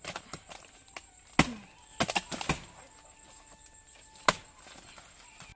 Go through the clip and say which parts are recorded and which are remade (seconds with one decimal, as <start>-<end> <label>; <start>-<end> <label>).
0.0-5.6 recorded